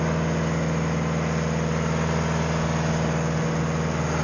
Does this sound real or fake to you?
real